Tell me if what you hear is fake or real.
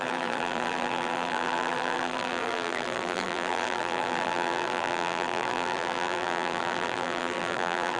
fake